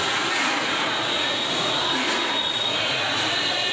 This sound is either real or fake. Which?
fake